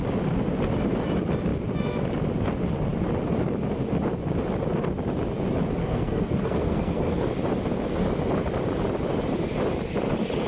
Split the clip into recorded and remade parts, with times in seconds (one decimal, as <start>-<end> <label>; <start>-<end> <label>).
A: 0.0-5.8 recorded; 5.8-7.3 remade; 7.3-10.5 recorded